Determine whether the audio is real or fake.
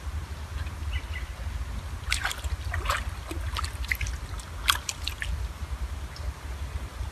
real